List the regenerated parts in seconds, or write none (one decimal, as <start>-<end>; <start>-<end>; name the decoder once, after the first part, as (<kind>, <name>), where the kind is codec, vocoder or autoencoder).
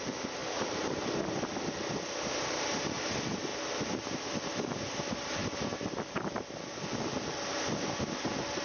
3.5-5.3 (vocoder, BigVGAN v2)